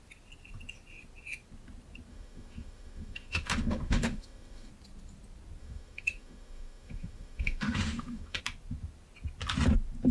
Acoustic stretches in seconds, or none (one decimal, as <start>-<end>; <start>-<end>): 0.0-2.1; 4.7-5.6; 8.4-10.1